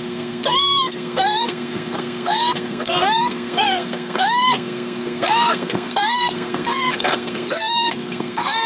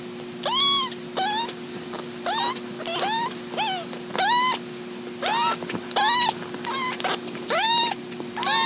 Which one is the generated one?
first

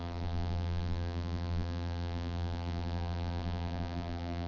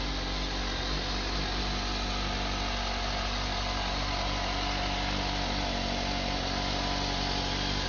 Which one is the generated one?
first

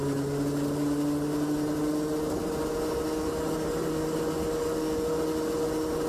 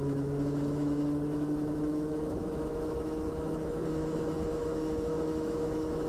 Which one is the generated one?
second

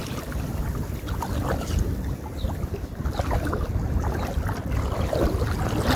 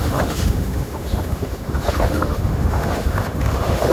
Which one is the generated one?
second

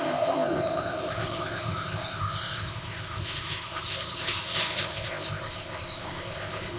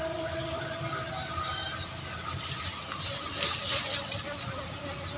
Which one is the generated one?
first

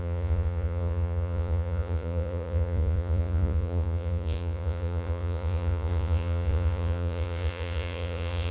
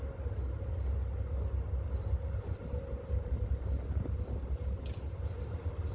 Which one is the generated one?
first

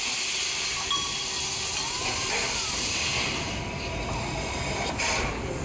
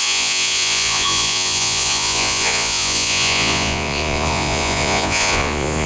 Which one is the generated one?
second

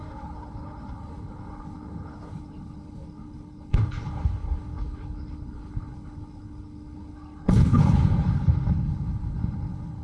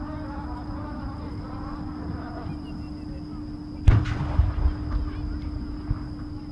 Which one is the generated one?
first